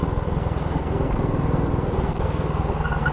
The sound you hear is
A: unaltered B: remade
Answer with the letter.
B